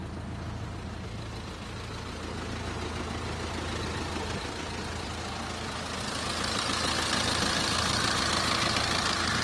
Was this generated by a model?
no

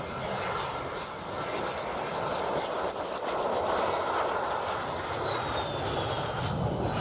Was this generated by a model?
no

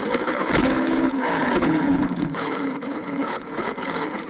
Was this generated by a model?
yes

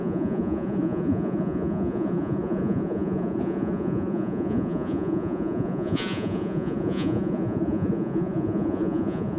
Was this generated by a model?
yes